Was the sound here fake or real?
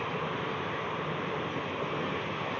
real